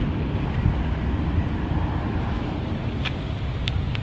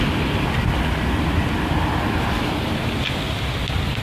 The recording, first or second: second